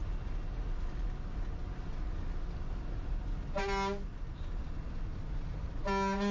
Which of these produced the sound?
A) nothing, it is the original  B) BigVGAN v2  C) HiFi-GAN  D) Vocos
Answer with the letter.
A